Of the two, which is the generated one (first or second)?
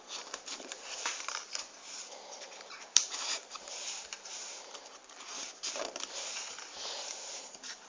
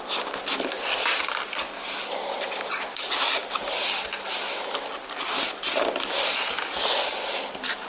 first